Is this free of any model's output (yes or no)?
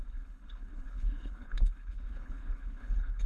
no